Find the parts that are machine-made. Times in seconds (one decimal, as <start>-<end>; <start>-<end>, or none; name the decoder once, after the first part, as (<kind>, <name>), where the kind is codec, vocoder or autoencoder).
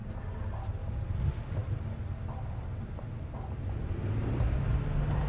none